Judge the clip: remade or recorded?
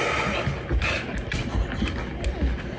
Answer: recorded